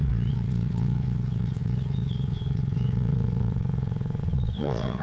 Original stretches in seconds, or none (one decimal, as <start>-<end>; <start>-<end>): none